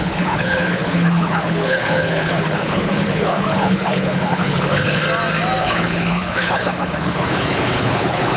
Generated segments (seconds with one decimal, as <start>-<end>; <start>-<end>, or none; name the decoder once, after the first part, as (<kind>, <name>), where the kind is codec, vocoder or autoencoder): 0.0-5.0 (codec, HILCodec); 5.6-8.4